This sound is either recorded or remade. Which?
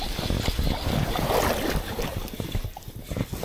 remade